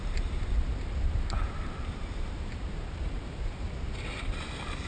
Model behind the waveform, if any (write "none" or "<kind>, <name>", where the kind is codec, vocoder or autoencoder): vocoder, BigVGAN v2